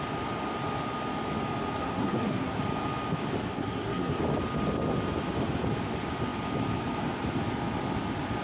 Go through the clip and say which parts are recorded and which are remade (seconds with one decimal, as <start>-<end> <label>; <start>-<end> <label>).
0.0-1.8 recorded; 1.8-2.6 remade; 2.6-3.5 recorded; 3.5-4.2 remade; 4.2-8.4 recorded